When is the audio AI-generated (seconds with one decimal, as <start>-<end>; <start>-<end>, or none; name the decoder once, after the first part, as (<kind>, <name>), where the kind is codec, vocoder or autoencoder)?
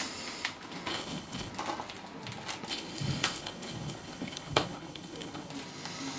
0.9-1.5 (codec, HILCodec); 2.7-5.5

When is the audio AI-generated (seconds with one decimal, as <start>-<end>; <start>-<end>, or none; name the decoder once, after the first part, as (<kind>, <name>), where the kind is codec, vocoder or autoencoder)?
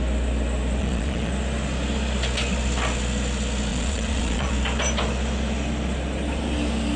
0.8-1.3 (vocoder, Vocos); 3.7-4.5